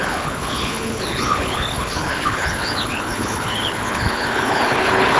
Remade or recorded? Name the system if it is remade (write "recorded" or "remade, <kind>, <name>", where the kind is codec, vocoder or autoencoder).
remade, codec, HILCodec